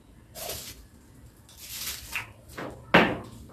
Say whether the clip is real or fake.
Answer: real